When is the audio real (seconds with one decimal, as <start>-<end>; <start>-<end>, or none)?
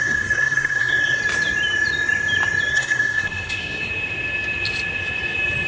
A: 1.2-2.7; 3.9-5.7